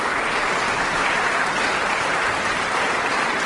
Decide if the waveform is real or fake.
real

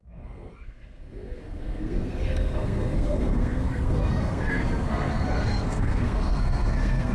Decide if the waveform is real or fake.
fake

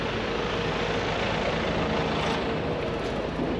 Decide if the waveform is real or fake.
real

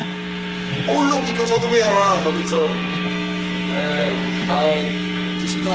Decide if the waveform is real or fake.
fake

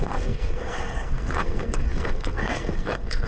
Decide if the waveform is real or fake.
fake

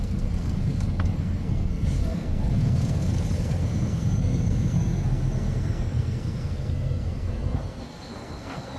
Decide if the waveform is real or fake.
fake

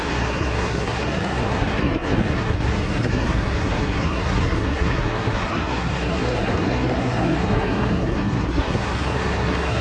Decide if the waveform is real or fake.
fake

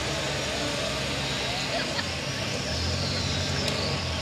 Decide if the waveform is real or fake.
real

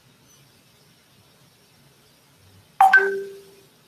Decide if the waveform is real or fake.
real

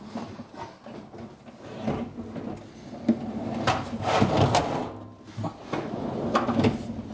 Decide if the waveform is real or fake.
real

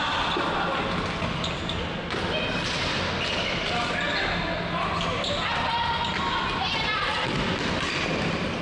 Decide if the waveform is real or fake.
real